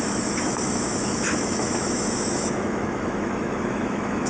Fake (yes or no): yes